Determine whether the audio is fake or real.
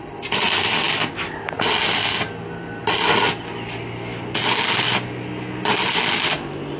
real